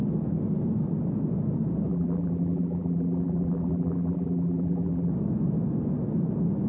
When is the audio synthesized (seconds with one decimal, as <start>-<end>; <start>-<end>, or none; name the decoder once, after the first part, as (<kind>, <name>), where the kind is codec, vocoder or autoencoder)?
1.9-5.1 (vocoder, BigVGAN v2)